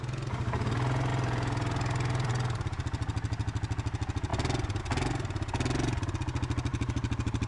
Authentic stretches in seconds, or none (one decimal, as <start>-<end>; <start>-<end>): 0.0-1.1; 2.3-6.7